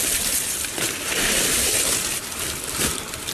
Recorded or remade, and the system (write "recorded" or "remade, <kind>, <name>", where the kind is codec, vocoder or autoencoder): remade, vocoder, BigVGAN v2